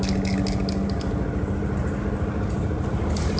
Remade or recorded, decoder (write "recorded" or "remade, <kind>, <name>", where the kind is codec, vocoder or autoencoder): recorded